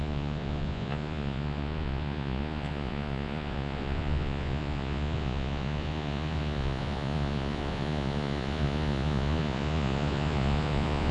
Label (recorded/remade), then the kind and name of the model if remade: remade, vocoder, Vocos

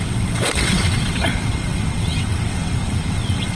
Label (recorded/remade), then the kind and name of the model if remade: remade, vocoder, WaveNeXt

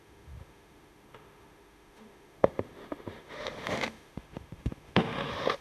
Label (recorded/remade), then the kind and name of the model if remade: remade, autoencoder, DAC-VAE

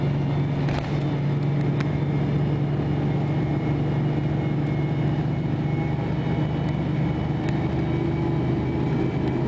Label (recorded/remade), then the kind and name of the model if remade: recorded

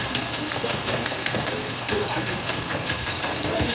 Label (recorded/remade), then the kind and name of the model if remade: remade, codec, SNAC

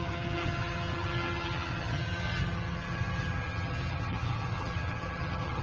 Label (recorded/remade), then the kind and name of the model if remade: remade, vocoder, HiFi-GAN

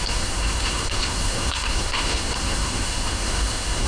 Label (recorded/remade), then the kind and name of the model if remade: remade, codec, SNAC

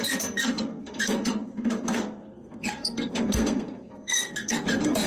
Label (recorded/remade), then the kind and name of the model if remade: remade, codec, SNAC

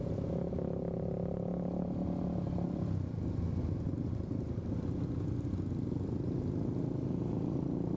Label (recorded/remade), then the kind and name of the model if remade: recorded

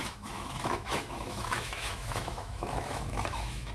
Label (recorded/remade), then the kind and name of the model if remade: remade, autoencoder, DAC-VAE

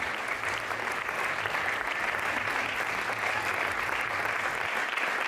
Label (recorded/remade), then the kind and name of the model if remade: recorded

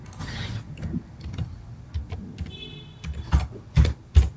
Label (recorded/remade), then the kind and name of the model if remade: recorded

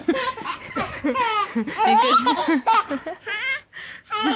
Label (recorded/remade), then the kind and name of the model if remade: recorded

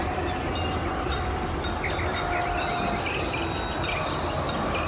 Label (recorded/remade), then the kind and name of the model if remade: recorded